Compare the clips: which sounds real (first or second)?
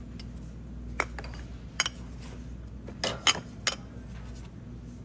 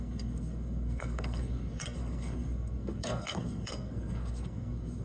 first